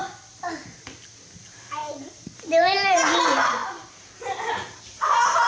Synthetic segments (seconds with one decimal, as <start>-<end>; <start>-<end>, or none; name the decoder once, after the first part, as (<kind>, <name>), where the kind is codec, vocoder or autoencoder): 1.4-5.5 (vocoder, BigVGAN v2)